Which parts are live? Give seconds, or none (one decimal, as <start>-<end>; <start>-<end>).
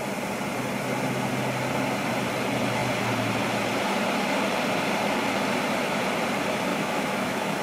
0.0-6.7